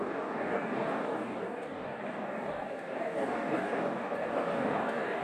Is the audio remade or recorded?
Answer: remade